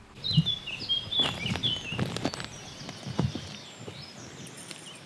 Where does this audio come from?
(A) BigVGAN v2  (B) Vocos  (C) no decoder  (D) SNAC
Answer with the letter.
C